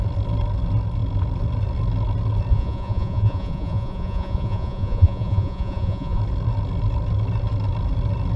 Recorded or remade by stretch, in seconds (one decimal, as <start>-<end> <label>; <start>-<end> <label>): 0.0-2.5 recorded; 2.5-6.2 remade; 6.2-8.4 recorded